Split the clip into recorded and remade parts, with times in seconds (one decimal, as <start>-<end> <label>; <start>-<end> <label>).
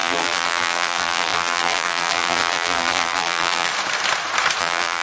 0.0-3.7 remade; 3.7-4.6 recorded; 4.6-5.0 remade